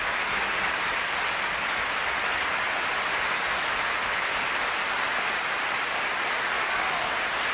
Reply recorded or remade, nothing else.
recorded